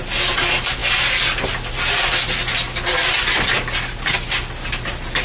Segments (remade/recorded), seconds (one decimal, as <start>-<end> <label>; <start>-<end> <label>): 0.0-5.2 recorded

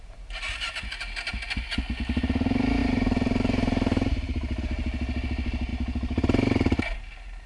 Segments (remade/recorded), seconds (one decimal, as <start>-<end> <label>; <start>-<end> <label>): 0.0-2.8 recorded; 2.8-4.6 remade; 4.6-7.5 recorded

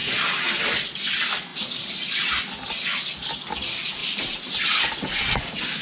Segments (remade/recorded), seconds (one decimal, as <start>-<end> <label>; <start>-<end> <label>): 0.0-1.5 recorded; 1.5-2.4 remade; 2.4-4.0 recorded; 4.0-4.8 remade; 4.8-5.8 recorded

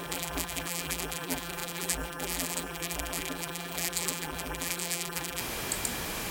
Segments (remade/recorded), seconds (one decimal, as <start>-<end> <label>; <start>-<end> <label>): 0.0-5.4 remade; 5.4-6.3 recorded

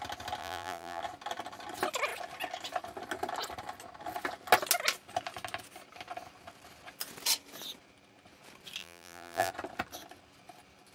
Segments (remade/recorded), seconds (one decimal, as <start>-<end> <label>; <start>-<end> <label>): 0.0-0.4 recorded; 0.4-1.0 remade; 1.0-8.8 recorded; 8.8-9.5 remade; 9.5-10.9 recorded